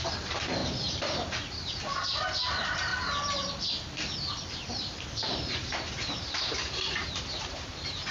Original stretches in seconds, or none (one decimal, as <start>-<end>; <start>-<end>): 2.9-4.5